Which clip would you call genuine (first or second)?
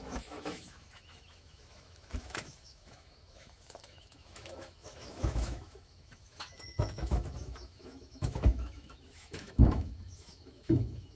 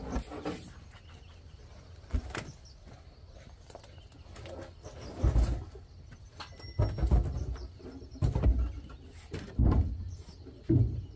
second